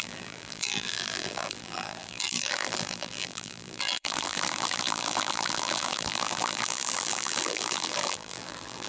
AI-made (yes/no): yes